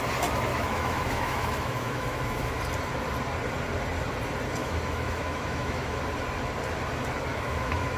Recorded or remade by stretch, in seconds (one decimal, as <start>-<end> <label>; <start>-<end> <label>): 0.0-0.5 recorded; 0.5-2.6 remade; 2.6-4.6 recorded; 4.6-6.0 remade; 6.0-7.3 recorded; 7.3-8.0 remade